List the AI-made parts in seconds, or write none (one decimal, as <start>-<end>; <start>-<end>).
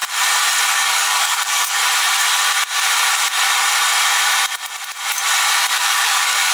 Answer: 0.7-1.8; 5.7-6.5